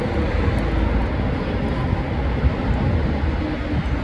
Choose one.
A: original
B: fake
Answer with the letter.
A